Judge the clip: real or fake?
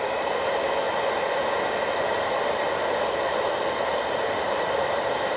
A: real